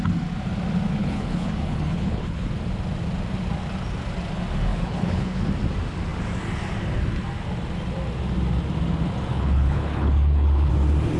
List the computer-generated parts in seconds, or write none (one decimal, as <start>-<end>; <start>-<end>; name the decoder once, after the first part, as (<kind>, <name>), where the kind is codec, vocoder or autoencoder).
1.0-2.5 (codec, HILCodec); 4.7-5.5; 9.3-10.7

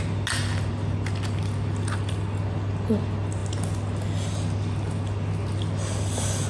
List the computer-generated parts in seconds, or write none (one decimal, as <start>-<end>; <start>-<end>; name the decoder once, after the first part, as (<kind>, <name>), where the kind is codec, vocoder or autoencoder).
none

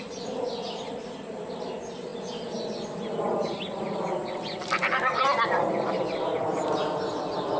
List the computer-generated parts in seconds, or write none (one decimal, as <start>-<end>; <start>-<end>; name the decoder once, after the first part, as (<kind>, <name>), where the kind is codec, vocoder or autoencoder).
none

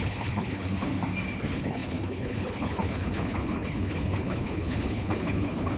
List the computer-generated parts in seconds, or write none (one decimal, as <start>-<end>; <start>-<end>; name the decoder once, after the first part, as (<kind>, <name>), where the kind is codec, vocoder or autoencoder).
0.0-0.9 (codec, HILCodec); 1.4-5.8